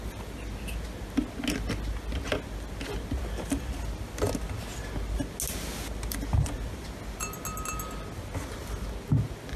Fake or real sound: real